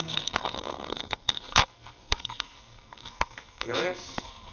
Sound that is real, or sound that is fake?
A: fake